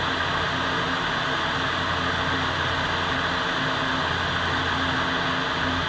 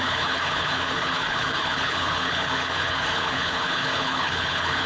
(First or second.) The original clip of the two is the first